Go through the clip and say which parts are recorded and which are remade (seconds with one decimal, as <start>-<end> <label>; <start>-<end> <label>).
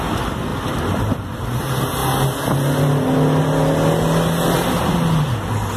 0.0-0.5 recorded; 0.5-1.0 remade; 1.0-5.8 recorded